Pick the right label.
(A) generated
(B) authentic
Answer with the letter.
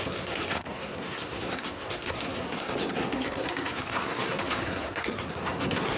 A